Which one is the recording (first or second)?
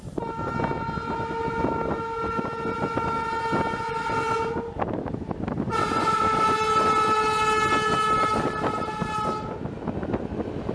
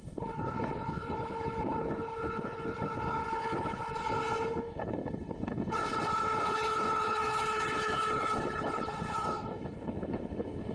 first